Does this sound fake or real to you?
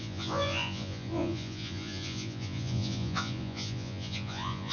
fake